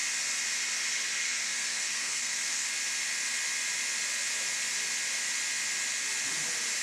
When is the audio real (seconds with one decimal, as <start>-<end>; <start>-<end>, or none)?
0.0-1.2; 2.7-6.8